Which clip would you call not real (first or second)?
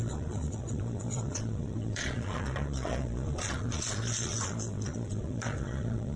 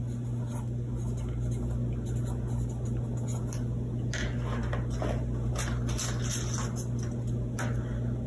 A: first